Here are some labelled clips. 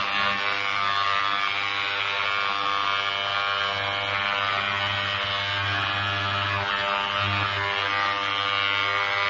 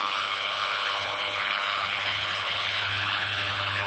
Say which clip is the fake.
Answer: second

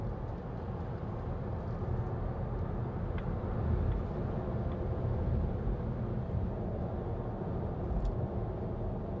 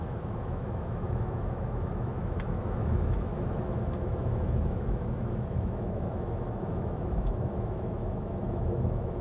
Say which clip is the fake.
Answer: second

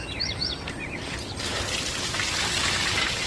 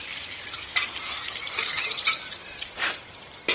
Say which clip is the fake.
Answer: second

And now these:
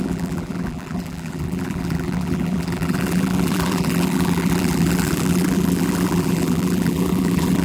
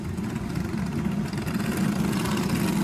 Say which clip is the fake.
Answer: first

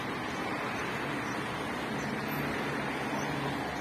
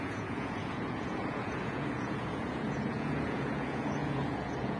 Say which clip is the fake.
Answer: second